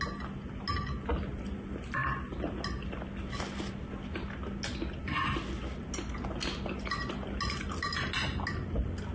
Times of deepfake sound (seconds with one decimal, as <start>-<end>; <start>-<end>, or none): none